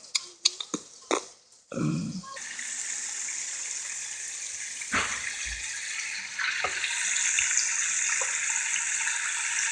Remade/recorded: recorded